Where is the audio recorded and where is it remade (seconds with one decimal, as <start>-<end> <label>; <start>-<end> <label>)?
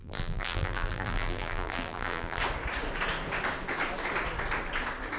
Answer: 0.0-2.4 remade; 2.4-5.2 recorded